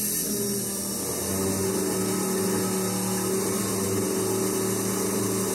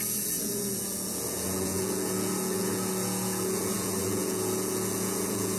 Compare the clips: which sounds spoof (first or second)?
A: second